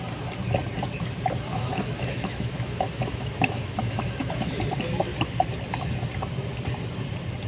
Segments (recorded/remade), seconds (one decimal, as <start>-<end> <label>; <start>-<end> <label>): 0.0-1.5 recorded; 1.5-4.6 remade; 4.6-7.5 recorded

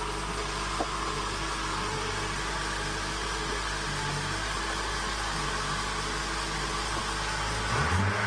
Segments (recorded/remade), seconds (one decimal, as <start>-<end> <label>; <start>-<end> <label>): 0.0-8.3 recorded

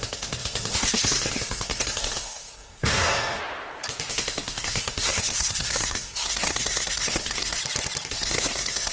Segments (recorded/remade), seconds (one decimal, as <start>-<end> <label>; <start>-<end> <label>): 0.0-3.4 remade; 3.4-4.1 recorded; 4.1-7.6 remade; 7.6-8.1 recorded; 8.1-8.9 remade